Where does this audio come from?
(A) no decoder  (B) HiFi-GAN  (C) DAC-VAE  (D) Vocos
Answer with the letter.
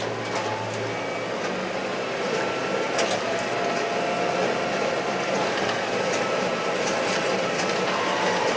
A